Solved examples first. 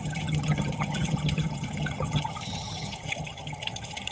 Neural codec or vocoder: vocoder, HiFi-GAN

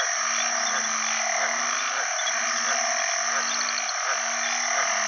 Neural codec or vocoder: none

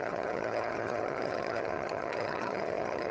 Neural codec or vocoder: vocoder, HiFi-GAN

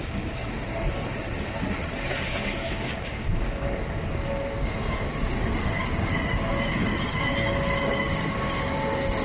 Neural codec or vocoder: codec, DAC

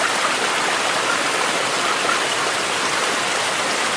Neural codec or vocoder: none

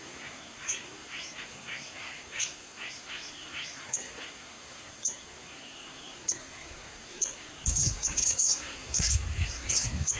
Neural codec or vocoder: codec, SNAC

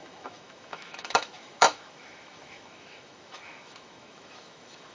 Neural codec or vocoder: autoencoder, DAC-VAE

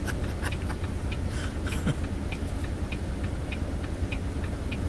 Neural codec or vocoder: none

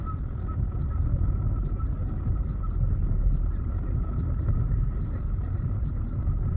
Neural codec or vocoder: none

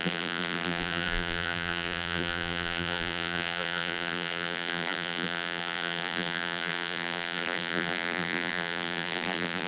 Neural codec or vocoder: vocoder, BigVGAN v2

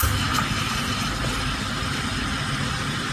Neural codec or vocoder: none